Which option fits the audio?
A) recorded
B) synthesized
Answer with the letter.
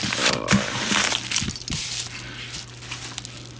A